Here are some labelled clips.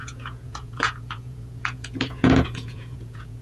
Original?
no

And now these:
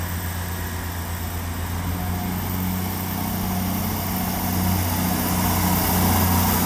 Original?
yes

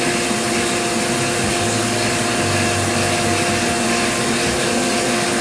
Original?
yes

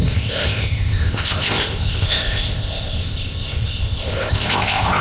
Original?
no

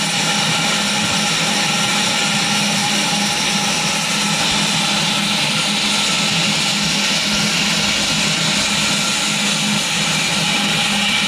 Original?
yes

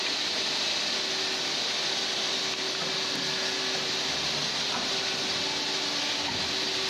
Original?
yes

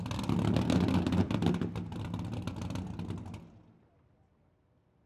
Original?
yes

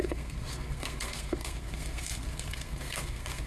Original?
no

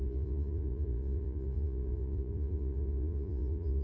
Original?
no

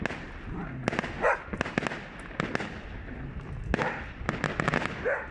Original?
yes